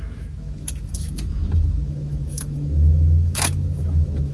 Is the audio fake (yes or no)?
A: yes